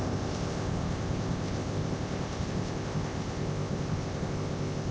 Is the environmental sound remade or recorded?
remade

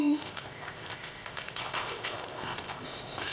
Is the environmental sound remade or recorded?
remade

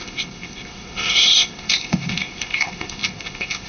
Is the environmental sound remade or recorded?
remade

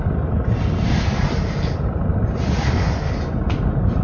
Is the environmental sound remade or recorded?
recorded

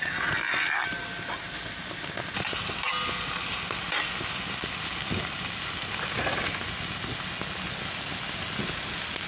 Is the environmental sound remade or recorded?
recorded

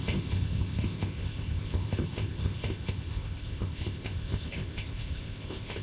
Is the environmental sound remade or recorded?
remade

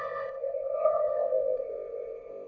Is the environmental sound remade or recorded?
remade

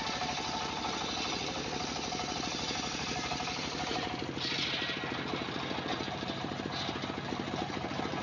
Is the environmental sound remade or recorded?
recorded